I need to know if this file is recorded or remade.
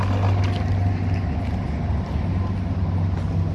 recorded